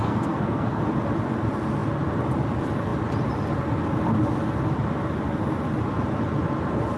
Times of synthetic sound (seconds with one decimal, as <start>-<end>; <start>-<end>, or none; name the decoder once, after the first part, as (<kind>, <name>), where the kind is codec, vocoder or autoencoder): 0.0-0.8 (codec, SNAC)